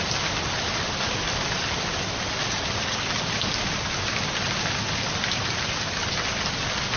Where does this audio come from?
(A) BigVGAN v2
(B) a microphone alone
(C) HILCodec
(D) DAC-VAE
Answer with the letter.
B